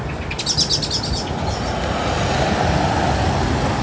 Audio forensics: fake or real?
real